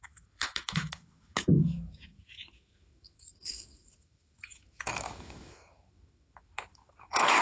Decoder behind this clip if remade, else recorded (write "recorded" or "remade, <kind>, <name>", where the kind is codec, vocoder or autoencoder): remade, autoencoder, DAC-VAE